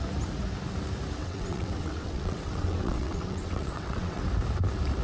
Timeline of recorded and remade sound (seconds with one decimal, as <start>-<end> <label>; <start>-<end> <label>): 0.0-1.2 recorded; 1.2-4.2 remade; 4.2-5.0 recorded